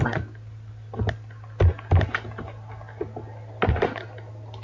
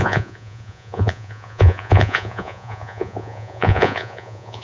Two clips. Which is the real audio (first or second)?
first